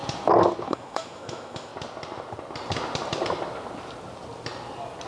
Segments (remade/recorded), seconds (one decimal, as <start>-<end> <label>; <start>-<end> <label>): 0.0-0.7 recorded; 0.7-1.7 remade; 1.7-5.1 recorded